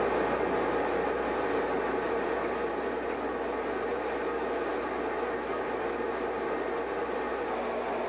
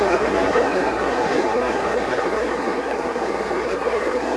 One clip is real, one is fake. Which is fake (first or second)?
second